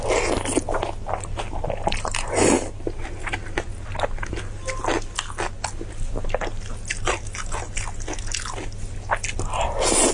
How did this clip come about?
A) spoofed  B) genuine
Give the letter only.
B